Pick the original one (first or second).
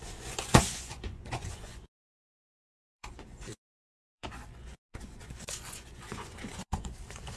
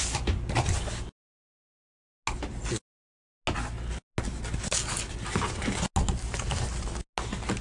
second